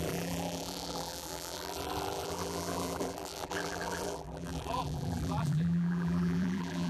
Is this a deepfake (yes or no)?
yes